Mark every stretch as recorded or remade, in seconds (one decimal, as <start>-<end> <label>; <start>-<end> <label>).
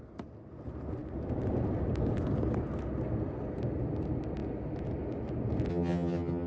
0.0-5.7 recorded; 5.7-6.5 remade